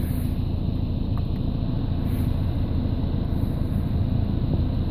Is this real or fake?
real